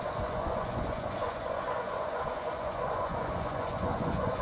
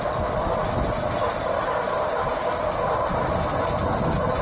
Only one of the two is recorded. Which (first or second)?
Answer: second